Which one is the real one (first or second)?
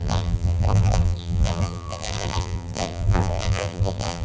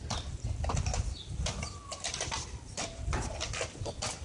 second